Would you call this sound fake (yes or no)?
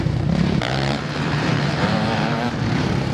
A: yes